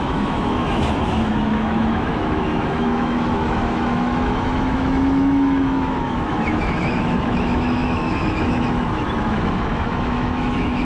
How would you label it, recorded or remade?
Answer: remade